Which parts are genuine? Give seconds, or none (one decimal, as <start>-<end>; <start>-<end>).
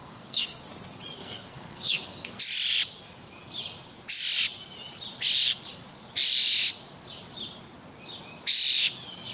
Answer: 0.6-1.2; 2.4-9.3